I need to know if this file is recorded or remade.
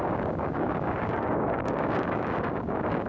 remade